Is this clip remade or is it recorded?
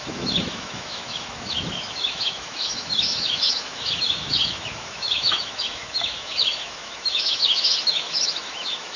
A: remade